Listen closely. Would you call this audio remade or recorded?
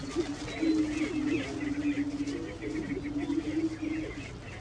recorded